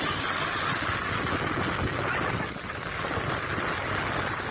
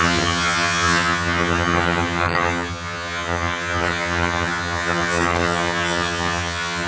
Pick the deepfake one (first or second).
second